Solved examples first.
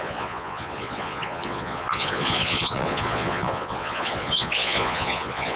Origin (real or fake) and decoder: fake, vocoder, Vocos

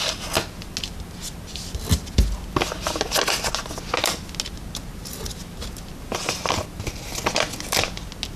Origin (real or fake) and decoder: real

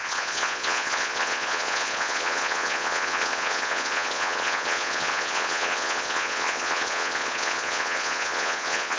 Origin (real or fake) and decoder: fake, vocoder, Vocos